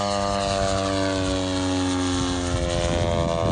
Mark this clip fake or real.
real